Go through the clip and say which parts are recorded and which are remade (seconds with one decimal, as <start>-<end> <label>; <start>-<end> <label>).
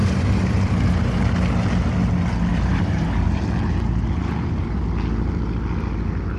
0.0-1.2 remade; 1.2-2.5 recorded; 2.5-3.4 remade; 3.4-4.2 recorded; 4.2-4.8 remade; 4.8-6.4 recorded